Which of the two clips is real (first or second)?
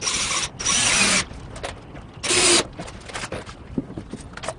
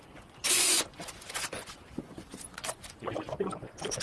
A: first